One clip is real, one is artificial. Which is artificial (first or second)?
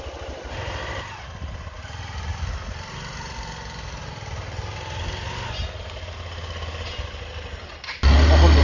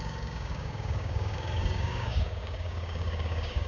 second